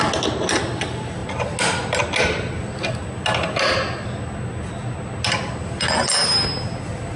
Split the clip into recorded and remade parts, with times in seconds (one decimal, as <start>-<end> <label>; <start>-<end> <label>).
0.0-7.2 recorded